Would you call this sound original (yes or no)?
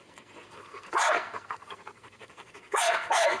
no